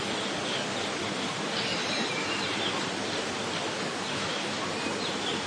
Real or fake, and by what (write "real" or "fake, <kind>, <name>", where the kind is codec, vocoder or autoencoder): real